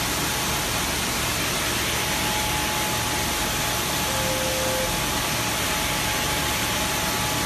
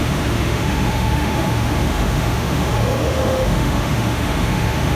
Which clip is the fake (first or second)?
second